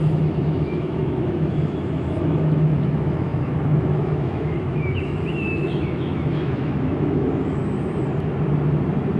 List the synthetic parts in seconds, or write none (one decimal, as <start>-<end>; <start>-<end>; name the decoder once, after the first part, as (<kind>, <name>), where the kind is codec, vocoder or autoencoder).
0.0-7.6 (autoencoder, DAC-VAE)